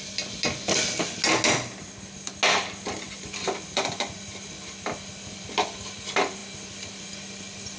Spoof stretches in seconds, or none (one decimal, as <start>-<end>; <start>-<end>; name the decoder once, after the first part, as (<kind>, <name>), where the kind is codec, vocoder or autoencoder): none